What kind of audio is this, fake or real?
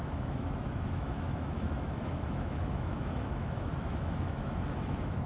fake